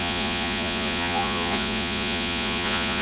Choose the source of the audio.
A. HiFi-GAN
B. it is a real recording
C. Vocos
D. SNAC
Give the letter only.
C